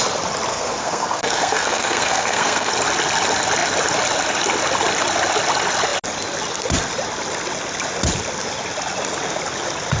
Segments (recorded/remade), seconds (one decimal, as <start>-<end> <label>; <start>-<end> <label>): 0.0-0.5 recorded; 0.5-2.7 remade; 2.7-10.0 recorded